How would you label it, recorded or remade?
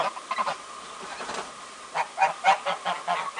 recorded